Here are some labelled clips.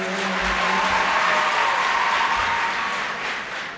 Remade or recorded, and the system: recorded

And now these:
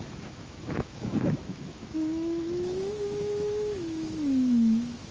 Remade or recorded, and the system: remade, autoencoder, DAC-VAE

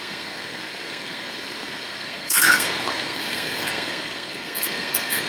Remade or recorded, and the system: remade, codec, SNAC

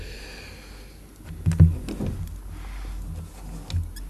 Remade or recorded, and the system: recorded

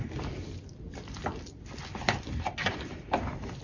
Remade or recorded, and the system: recorded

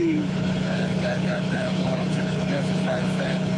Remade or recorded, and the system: remade, codec, HILCodec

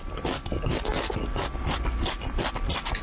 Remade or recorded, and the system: recorded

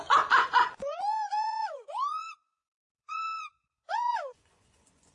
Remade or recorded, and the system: remade, vocoder, Vocos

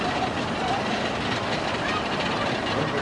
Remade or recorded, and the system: recorded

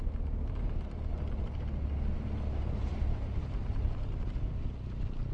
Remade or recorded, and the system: recorded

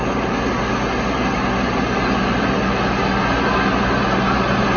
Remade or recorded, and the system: recorded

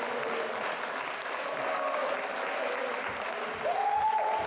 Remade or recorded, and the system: recorded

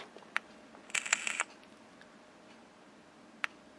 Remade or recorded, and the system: recorded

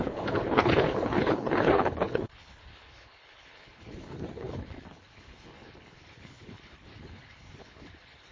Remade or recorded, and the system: remade, codec, HILCodec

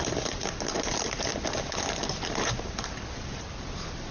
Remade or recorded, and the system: recorded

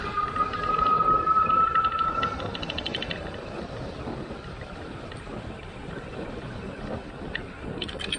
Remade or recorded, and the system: recorded